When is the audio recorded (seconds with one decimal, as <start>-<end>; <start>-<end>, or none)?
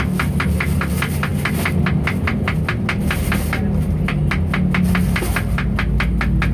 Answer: 0.0-6.5